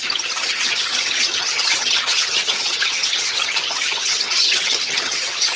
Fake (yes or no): yes